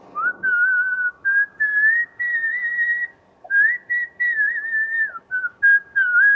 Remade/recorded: recorded